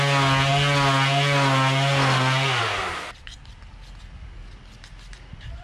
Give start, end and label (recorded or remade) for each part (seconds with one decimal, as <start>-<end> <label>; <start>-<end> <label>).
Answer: 0.0-5.6 recorded